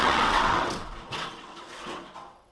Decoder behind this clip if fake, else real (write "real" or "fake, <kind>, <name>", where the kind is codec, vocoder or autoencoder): fake, vocoder, WaveNeXt